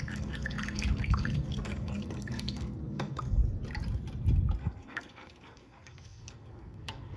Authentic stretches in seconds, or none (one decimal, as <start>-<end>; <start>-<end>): 3.4-4.6